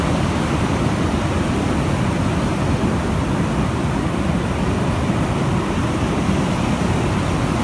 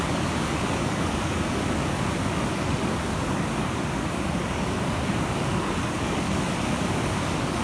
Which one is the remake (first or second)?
second